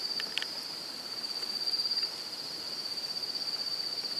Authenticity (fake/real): real